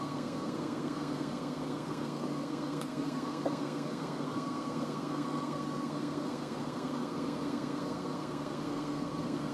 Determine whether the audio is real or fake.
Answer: fake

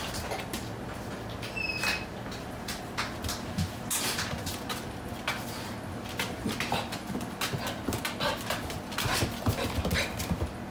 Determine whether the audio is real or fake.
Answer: real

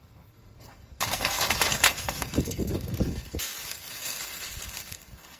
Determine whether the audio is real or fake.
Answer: fake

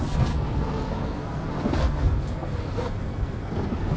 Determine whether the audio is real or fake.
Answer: fake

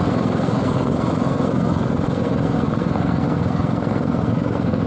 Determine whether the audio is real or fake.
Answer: fake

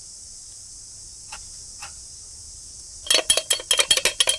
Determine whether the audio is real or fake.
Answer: real